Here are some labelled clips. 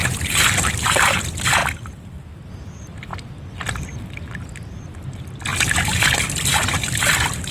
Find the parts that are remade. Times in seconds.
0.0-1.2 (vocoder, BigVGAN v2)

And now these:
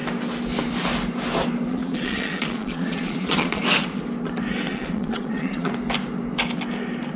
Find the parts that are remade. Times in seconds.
1.7-3.6 (vocoder, Vocos); 4.7-5.7

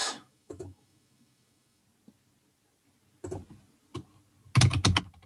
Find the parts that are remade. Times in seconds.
0.0-1.8 (autoencoder, DAC-VAE)

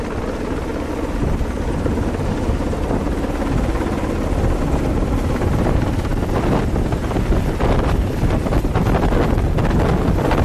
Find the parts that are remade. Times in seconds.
none

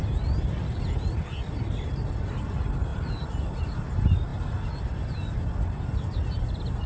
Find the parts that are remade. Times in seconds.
none

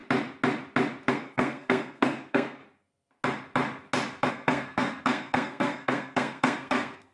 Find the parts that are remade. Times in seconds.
1.1-2.6 (codec, SNAC); 4.3-7.1

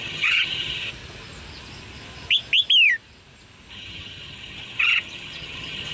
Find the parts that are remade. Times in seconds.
0.0-0.9 (vocoder, HiFi-GAN); 3.7-5.9